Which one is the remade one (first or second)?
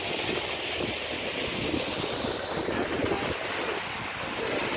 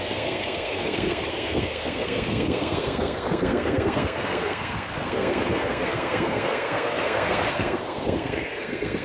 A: second